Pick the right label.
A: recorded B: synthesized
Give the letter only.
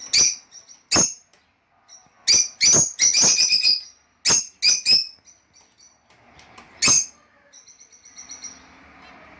A